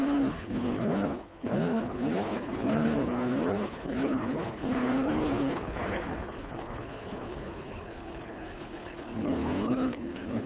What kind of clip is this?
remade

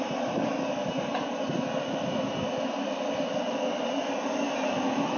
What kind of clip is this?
recorded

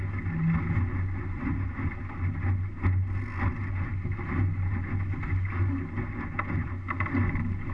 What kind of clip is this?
recorded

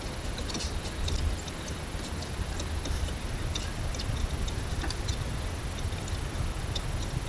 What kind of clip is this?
recorded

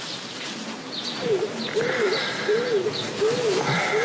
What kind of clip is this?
recorded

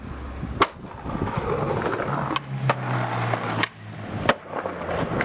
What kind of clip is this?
recorded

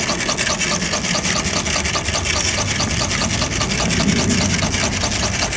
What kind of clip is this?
recorded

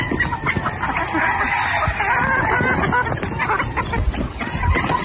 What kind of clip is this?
recorded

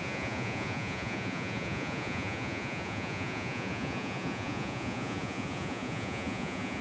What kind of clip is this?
remade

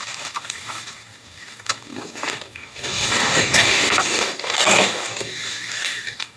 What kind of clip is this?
remade